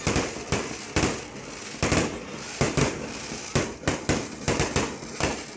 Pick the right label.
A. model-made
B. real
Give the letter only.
B